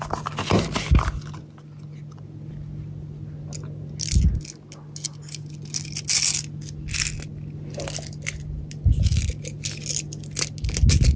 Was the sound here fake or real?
real